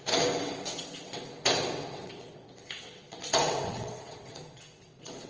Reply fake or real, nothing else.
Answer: fake